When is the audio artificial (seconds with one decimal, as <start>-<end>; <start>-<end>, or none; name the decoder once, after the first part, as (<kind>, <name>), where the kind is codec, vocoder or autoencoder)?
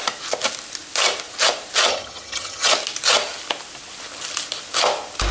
1.9-2.7 (vocoder, HiFi-GAN)